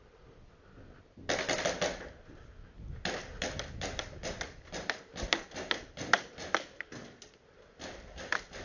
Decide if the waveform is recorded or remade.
recorded